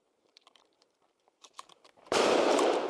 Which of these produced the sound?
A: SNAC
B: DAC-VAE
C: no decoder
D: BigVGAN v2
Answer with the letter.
D